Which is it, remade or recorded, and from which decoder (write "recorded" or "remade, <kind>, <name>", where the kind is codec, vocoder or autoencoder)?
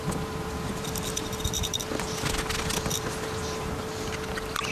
recorded